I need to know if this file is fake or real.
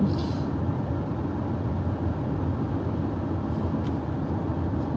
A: real